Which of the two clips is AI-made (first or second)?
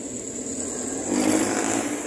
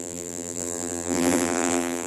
second